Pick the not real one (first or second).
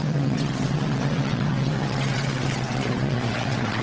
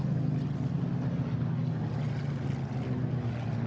first